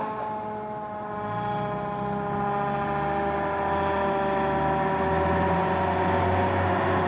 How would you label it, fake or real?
real